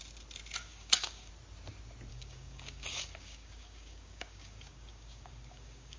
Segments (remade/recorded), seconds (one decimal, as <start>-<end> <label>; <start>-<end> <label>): 0.0-0.6 recorded; 0.6-1.3 remade; 1.3-2.1 recorded; 2.1-6.0 remade